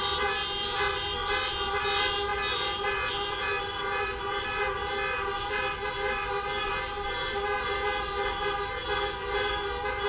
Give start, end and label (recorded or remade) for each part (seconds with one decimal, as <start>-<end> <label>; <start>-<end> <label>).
0.0-10.1 recorded